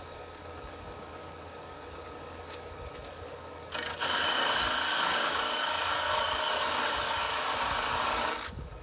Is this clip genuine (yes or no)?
no